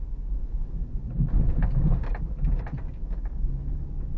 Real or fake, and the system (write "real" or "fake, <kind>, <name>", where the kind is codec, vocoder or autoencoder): real